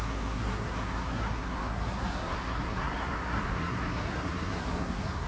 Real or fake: fake